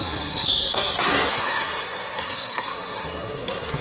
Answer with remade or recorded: remade